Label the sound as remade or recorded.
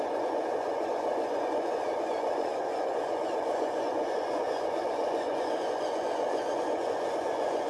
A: remade